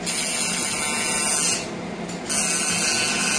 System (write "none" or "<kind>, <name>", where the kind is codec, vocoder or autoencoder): none